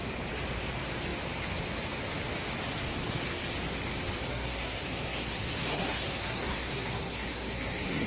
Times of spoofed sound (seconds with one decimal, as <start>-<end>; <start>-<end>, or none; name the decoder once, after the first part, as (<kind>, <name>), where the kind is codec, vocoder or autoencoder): 4.3-8.1 (codec, SNAC)